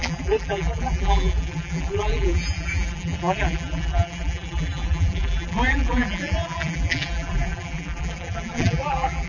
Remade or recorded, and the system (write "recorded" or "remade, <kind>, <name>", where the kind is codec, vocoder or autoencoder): remade, vocoder, BigVGAN v2